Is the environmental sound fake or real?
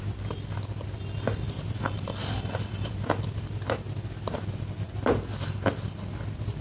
real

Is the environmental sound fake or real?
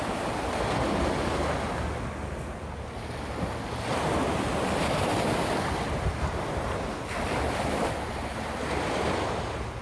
real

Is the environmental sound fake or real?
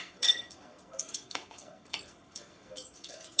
fake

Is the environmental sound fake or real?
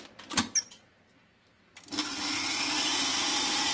real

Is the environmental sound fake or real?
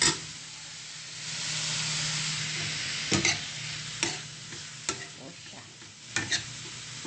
real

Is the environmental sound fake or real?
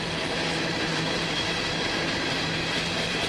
real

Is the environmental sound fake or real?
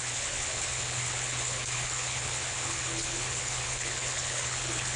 fake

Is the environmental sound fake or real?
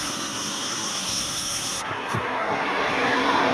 fake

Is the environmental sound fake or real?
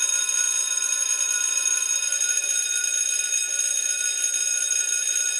real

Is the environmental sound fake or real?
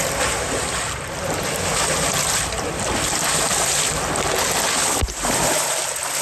real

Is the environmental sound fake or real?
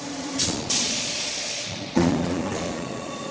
fake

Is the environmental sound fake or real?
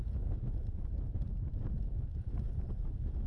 real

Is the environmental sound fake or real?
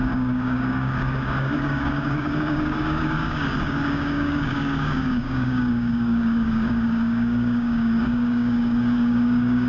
fake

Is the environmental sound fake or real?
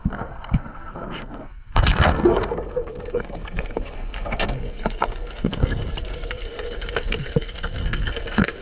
fake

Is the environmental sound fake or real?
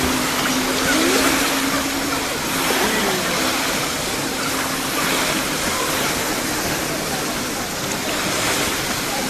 real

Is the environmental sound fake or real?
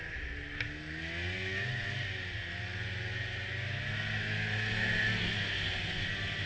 real